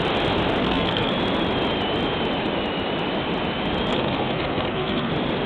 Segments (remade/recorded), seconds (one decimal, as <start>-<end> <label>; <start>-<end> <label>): 0.0-0.6 recorded; 0.6-1.1 remade; 1.1-3.9 recorded; 3.9-5.1 remade; 5.1-5.5 recorded